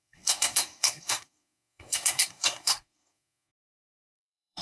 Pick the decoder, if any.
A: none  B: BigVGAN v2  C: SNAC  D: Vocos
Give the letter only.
C